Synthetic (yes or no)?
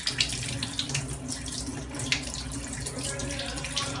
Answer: no